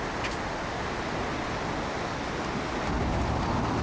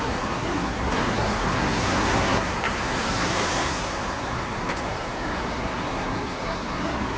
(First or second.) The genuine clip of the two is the first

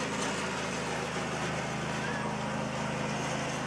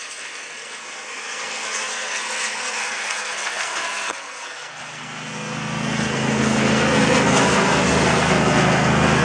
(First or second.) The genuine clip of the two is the first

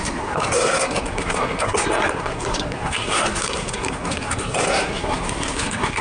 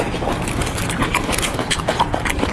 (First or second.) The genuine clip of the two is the second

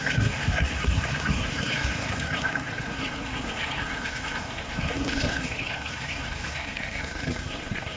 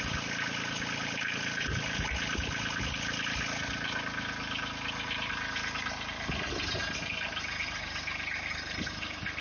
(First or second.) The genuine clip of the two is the second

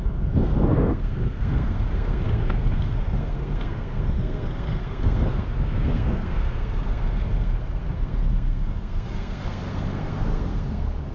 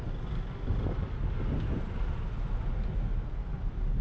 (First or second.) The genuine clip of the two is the second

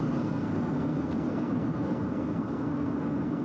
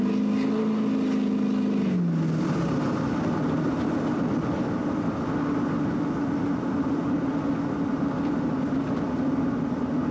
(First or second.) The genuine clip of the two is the second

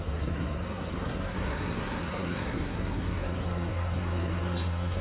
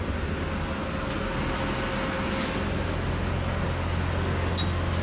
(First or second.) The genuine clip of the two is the second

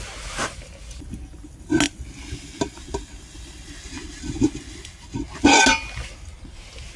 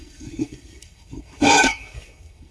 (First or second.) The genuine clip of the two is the first